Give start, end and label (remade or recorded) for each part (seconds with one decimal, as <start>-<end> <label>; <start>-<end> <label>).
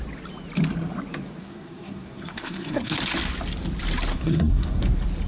0.0-1.4 recorded; 1.4-3.0 remade; 3.0-4.1 recorded; 4.1-4.8 remade; 4.8-5.3 recorded